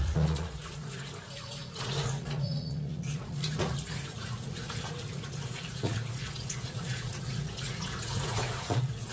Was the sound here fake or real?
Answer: fake